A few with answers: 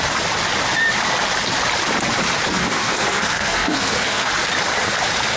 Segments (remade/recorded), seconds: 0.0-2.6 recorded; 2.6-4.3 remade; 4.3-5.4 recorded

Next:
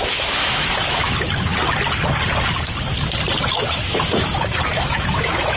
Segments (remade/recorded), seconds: 0.0-1.5 remade; 1.5-3.5 recorded; 3.5-5.6 remade

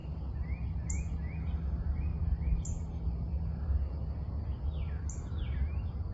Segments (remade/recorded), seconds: 0.0-6.1 recorded